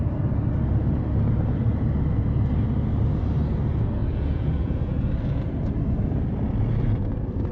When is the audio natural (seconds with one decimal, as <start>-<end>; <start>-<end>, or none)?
0.0-4.0; 5.1-7.5